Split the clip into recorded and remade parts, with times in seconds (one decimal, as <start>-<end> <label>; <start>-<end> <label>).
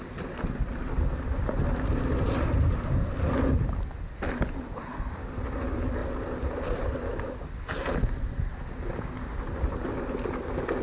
0.0-10.8 recorded